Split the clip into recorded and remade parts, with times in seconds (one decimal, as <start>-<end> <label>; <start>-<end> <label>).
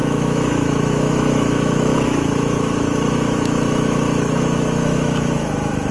0.0-5.9 remade